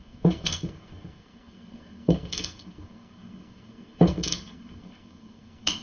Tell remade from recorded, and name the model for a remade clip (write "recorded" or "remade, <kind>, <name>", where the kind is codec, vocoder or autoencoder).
remade, codec, SNAC